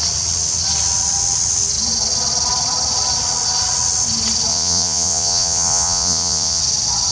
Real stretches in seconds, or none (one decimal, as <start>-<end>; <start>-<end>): 0.0-4.5; 6.6-7.1